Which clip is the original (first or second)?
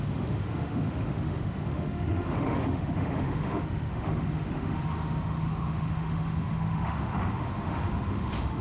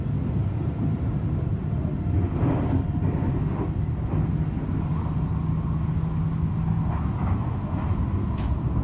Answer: second